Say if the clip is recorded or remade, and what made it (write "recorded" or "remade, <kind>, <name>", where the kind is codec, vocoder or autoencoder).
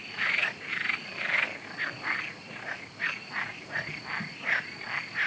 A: recorded